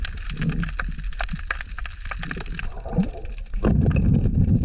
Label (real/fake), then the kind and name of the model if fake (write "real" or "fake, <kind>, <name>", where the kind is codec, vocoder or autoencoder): real